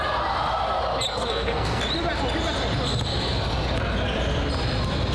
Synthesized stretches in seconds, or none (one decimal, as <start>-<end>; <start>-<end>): 1.1-1.8